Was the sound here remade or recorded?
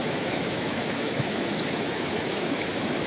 remade